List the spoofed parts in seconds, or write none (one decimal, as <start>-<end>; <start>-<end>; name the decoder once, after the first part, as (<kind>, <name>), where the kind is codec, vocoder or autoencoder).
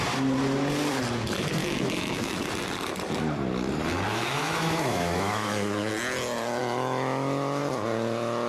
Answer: 1.6-2.5 (autoencoder, DAC-VAE); 4.1-5.9; 6.6-7.6